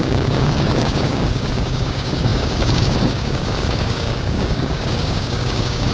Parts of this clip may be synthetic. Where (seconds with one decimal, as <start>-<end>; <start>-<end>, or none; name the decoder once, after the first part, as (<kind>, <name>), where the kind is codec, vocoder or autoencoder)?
0.0-5.9 (codec, DAC)